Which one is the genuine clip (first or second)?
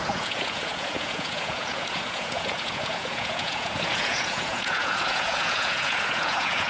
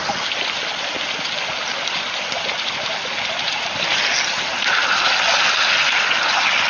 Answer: second